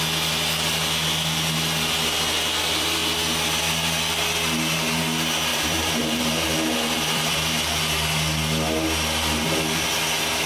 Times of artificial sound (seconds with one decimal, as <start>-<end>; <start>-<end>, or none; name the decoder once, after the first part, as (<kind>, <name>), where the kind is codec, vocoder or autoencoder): 5.5-7.8 (vocoder, BigVGAN v2)